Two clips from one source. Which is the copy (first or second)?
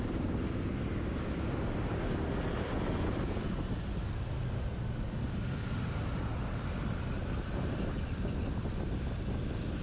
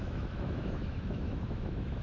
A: second